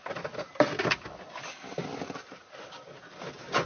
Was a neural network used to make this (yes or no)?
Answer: no